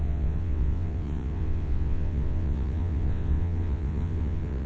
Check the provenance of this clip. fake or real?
fake